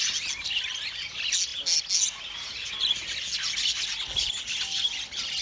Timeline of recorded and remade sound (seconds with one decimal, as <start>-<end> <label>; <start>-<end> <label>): 0.0-5.4 recorded